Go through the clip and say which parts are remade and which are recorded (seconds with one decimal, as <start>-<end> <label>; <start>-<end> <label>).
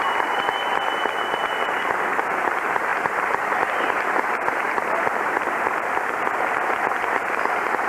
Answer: 0.0-7.9 recorded